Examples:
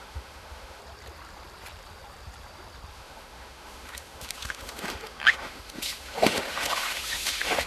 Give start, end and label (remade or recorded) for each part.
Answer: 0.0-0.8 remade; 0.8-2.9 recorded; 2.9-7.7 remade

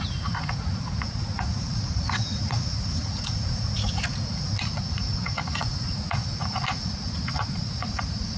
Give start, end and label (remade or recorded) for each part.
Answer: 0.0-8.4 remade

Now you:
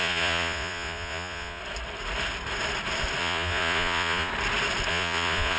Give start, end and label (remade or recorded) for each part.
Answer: 0.0-1.6 remade; 1.6-3.2 recorded; 3.2-4.3 remade; 4.3-4.9 recorded; 4.9-5.6 remade